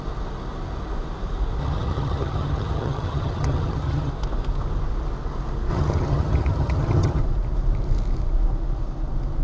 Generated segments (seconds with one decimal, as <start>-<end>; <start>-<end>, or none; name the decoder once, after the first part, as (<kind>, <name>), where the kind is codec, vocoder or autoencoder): 1.6-4.1 (vocoder, HiFi-GAN); 5.7-7.2